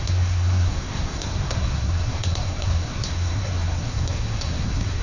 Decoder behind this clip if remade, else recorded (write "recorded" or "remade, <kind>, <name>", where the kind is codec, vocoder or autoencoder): remade, codec, SNAC